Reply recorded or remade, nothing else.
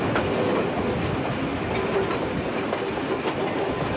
recorded